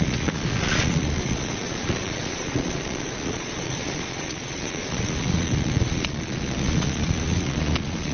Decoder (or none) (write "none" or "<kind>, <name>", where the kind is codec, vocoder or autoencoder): vocoder, Vocos